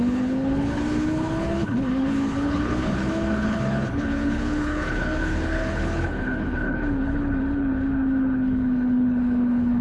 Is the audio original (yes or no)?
no